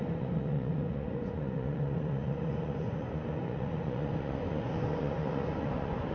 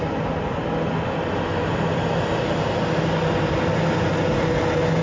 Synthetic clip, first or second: first